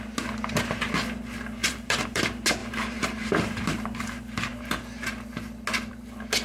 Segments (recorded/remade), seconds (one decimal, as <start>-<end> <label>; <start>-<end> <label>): 0.0-1.6 recorded; 1.6-2.2 remade; 2.2-2.6 recorded; 2.6-4.0 remade; 4.0-6.4 recorded